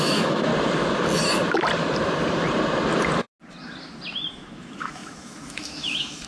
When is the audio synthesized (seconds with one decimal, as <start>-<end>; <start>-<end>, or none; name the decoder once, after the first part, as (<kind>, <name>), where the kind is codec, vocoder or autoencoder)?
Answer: 0.0-0.5 (autoencoder, DAC-VAE); 4.3-6.3

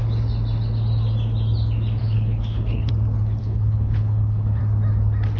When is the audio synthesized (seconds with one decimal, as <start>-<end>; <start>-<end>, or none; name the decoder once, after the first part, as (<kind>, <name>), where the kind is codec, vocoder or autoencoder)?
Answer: 2.0-2.9 (codec, HILCodec); 3.4-4.6

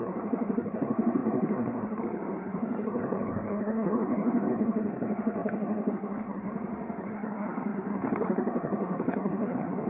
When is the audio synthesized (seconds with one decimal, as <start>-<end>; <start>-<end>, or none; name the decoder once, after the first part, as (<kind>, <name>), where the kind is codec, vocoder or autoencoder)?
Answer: 0.0-6.5 (codec, SNAC); 7.0-9.9